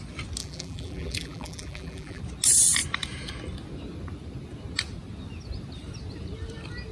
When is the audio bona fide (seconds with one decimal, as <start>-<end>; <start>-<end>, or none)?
0.0-0.4; 2.2-6.9